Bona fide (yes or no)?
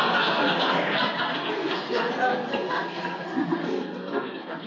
no